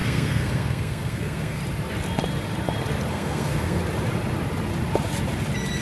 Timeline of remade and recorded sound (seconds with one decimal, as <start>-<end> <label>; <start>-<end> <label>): 0.0-1.6 remade; 1.6-3.1 recorded; 3.1-3.8 remade; 3.8-5.8 recorded